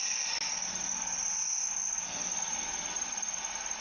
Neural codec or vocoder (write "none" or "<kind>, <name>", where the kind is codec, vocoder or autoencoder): none